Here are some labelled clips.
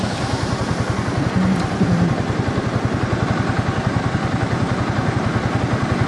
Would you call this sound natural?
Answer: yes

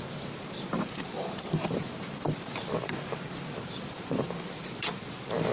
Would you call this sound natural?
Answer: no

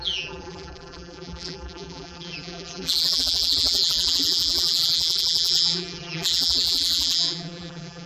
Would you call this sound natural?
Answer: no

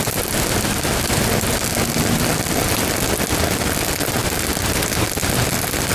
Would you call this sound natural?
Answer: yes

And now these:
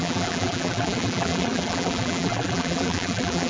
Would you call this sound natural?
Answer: no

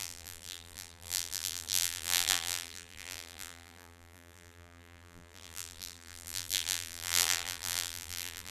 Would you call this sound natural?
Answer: no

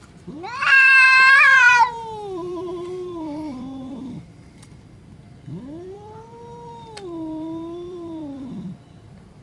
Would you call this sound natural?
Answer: no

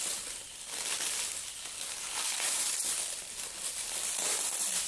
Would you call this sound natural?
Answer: yes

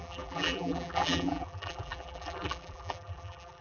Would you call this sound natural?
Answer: no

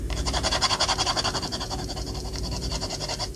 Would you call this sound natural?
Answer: no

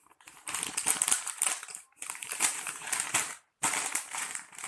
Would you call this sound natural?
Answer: no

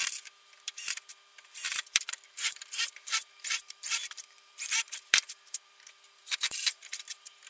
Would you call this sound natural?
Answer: no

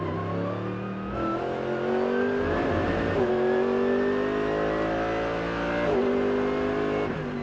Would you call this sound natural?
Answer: yes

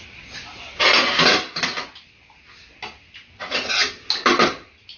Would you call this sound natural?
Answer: yes